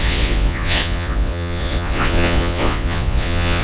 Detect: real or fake fake